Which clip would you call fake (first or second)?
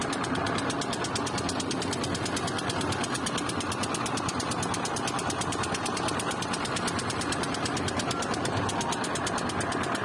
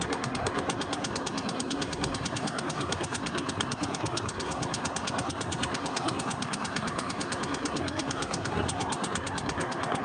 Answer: second